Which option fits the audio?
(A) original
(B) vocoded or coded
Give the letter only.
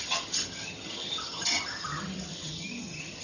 B